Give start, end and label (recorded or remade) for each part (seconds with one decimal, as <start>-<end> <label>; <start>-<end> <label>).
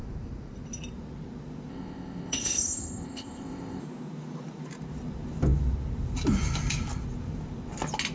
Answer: 0.0-1.7 recorded; 1.7-3.8 remade; 3.8-8.1 recorded